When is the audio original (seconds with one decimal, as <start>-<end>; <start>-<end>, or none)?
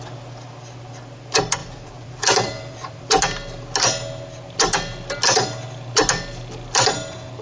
0.0-1.6; 3.2-7.4